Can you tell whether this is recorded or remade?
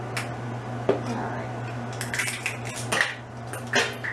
recorded